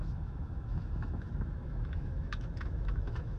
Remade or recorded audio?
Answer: remade